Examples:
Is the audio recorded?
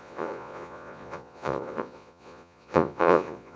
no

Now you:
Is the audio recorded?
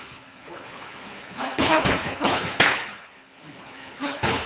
no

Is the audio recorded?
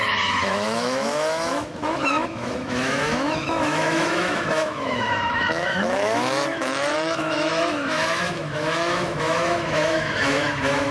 no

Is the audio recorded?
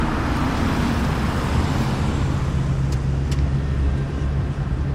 yes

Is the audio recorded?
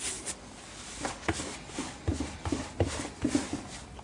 yes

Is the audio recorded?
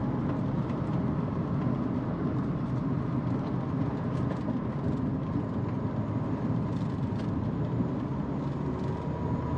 yes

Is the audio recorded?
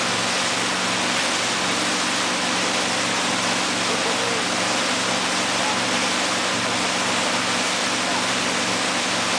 yes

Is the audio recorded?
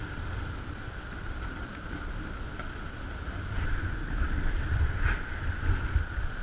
yes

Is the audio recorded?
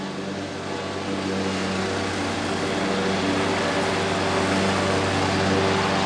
yes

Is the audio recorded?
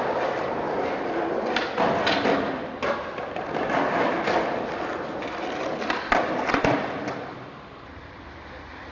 yes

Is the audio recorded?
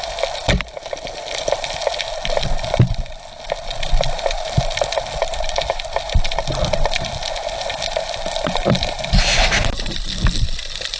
yes